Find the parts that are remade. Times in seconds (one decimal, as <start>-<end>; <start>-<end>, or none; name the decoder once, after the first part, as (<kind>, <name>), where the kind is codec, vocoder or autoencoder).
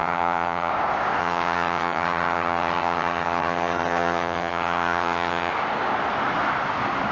0.0-0.7 (vocoder, HiFi-GAN); 1.2-5.5